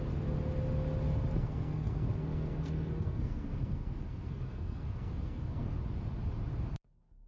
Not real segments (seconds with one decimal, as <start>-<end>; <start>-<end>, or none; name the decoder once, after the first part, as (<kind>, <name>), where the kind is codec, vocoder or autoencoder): 1.3-5.7 (codec, SNAC); 6.7-7.3